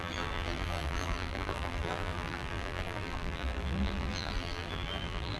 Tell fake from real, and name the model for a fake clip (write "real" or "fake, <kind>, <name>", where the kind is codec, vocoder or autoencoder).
fake, vocoder, BigVGAN v2